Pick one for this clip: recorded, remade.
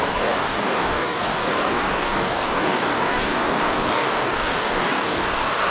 remade